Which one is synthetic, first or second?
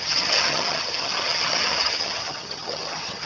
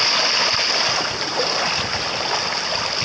first